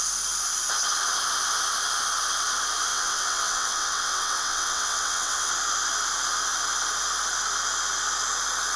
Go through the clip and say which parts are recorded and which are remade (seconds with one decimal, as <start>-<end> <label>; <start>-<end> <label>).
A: 0.0-2.9 recorded; 2.9-5.5 remade; 5.5-8.8 recorded